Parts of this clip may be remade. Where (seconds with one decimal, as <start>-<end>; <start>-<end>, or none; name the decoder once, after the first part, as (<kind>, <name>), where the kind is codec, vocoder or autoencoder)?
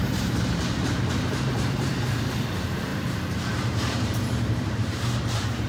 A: 0.0-5.7 (vocoder, BigVGAN v2)